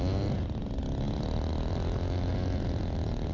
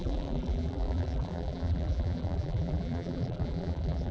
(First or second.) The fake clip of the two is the second